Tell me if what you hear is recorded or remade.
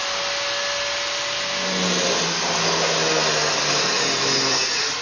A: recorded